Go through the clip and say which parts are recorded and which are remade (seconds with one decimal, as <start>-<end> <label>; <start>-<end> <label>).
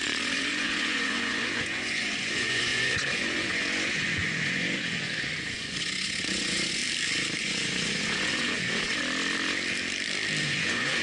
0.0-6.8 remade; 6.8-7.4 recorded; 7.4-9.0 remade; 9.0-10.4 recorded; 10.4-11.0 remade